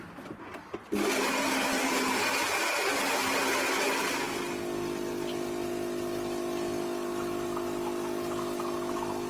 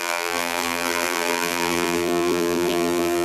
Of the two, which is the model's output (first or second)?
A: second